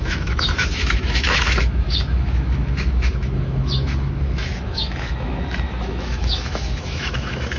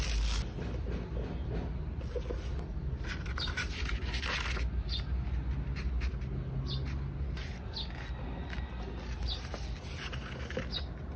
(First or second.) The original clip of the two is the second